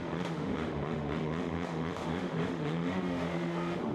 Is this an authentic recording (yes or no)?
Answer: no